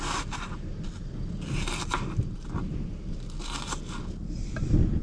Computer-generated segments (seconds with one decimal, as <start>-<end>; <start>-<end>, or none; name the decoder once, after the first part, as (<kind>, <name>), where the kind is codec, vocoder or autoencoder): none